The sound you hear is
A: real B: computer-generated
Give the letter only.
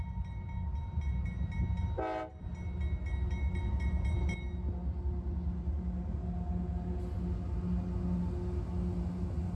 A